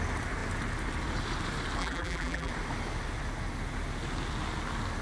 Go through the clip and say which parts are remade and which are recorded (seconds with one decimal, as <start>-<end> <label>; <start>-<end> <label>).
0.0-1.8 recorded; 1.8-2.5 remade; 2.5-5.0 recorded